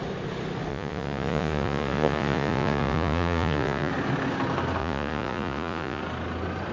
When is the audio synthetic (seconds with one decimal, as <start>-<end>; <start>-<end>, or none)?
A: 0.7-3.9; 4.8-6.0